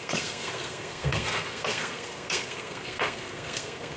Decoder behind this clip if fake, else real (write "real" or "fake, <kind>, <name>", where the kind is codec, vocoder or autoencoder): fake, codec, SNAC